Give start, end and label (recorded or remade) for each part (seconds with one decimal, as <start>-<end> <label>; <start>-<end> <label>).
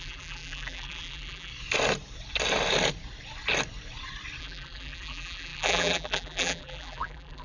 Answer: 0.0-1.5 remade; 1.5-4.4 recorded; 4.4-7.4 remade